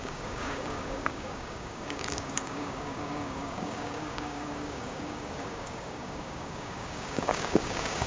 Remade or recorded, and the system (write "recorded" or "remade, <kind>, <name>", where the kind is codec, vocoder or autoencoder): remade, codec, DAC